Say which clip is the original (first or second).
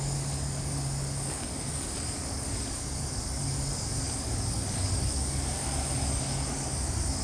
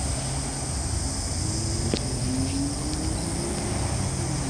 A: second